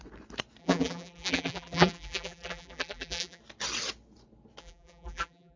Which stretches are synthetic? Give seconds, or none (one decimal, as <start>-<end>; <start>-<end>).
0.6-3.4; 4.6-5.6